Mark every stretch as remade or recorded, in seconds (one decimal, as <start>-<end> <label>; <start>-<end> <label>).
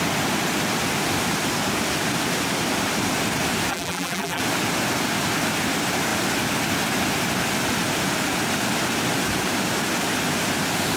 0.0-3.7 recorded; 3.7-4.4 remade; 4.4-11.0 recorded